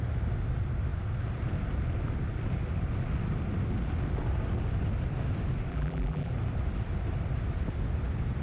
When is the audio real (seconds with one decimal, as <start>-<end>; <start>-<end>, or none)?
0.0-5.7; 6.3-8.4